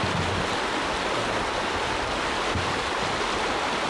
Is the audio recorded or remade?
recorded